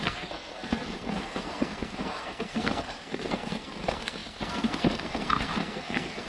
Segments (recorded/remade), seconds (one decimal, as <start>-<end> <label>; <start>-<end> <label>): 0.0-6.3 remade